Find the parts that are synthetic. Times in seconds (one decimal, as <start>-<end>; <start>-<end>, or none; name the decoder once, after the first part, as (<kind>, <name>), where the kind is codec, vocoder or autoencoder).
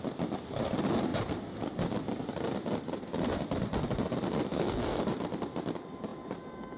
4.5-5.0 (codec, SNAC)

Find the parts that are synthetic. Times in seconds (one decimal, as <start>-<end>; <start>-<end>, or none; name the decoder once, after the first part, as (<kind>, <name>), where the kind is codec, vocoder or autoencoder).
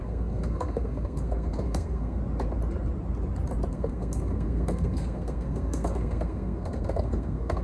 0.0-2.2 (codec, SNAC); 3.7-7.6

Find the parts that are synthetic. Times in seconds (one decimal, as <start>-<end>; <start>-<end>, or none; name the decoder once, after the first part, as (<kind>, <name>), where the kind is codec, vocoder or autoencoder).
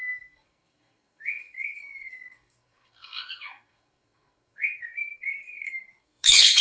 0.0-6.6 (codec, SNAC)